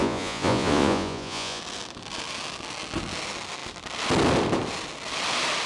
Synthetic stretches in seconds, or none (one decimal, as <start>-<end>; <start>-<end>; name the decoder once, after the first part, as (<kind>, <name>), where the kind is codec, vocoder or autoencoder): 0.0-1.6 (vocoder, Vocos)